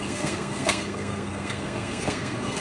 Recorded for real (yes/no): no